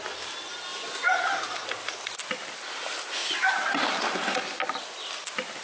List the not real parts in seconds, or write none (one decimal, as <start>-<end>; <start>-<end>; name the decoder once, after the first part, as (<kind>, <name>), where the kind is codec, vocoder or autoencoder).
none